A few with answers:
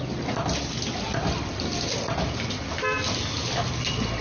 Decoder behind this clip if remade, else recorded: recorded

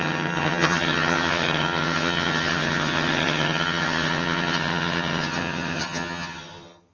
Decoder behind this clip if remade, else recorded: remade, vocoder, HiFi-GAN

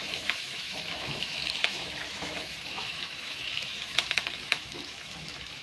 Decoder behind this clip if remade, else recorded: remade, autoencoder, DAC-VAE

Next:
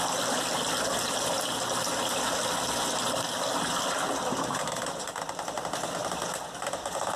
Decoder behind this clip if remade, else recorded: recorded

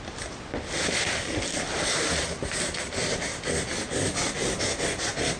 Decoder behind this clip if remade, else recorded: recorded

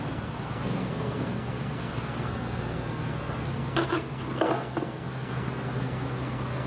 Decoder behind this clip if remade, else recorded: remade, codec, SNAC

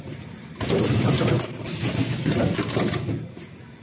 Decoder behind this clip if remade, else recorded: recorded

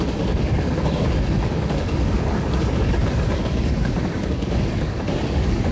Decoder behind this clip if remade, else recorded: remade, codec, DAC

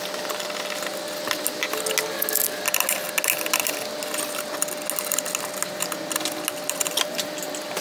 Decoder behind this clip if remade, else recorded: recorded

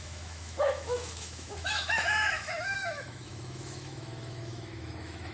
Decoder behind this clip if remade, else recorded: remade, autoencoder, DAC-VAE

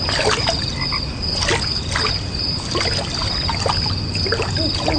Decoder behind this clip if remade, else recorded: recorded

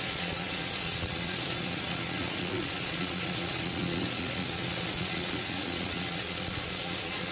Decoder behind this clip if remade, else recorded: remade, vocoder, Vocos